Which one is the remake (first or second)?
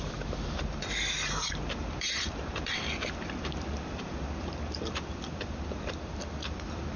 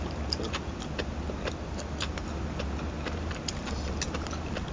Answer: first